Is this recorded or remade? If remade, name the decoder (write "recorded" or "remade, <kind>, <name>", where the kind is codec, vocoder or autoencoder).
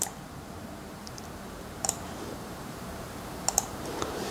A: remade, vocoder, BigVGAN v2